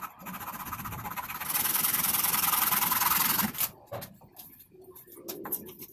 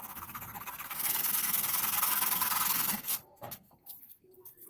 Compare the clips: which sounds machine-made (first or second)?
second